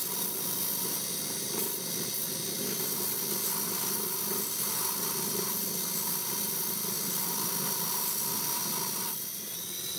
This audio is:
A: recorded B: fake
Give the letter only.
A